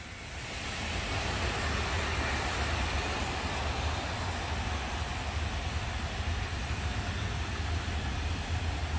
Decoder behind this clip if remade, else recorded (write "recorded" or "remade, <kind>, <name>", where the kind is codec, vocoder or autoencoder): recorded